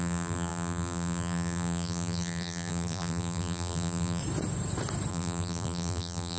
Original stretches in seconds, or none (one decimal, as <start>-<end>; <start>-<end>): 4.2-5.1